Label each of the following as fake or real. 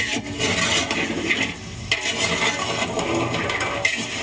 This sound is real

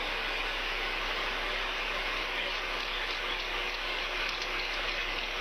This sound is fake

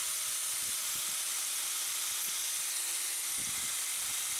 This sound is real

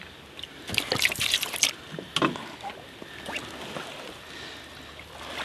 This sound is real